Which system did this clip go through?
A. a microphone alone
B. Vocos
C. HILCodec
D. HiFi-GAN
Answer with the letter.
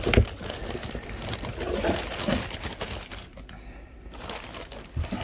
A